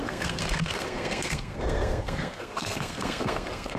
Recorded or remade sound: remade